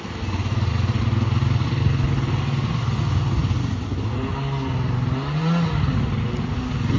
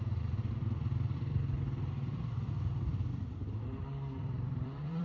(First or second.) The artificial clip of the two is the second